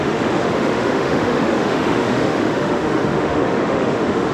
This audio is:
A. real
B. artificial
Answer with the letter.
B